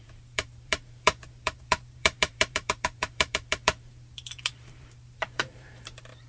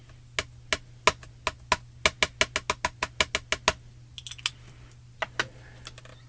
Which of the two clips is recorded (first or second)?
second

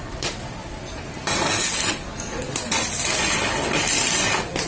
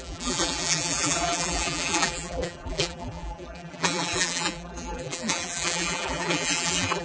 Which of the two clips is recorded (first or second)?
first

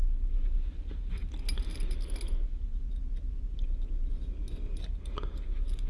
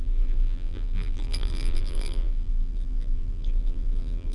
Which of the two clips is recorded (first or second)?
first